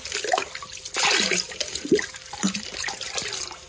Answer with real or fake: real